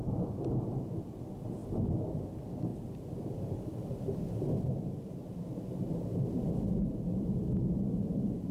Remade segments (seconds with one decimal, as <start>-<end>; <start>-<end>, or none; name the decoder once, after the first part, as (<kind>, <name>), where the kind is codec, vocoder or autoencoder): none